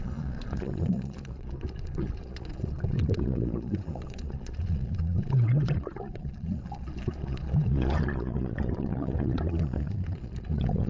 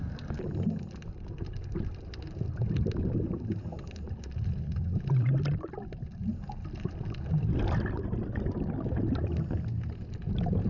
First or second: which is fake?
first